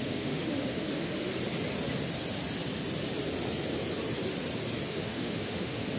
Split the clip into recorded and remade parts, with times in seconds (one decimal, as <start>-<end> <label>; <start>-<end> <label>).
0.0-1.3 remade; 1.3-4.9 recorded; 4.9-6.0 remade